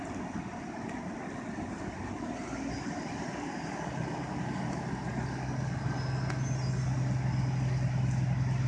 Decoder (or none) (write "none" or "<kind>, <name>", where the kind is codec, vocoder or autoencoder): none